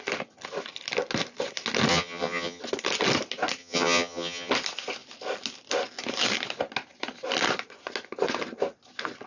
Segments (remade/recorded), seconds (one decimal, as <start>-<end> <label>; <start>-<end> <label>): 0.0-1.9 recorded; 1.9-2.6 remade; 2.6-3.6 recorded; 3.6-4.5 remade; 4.5-9.3 recorded